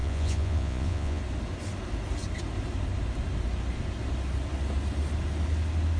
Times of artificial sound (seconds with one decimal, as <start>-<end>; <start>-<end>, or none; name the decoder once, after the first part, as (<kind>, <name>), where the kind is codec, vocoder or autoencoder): 0.0-1.2 (vocoder, Vocos)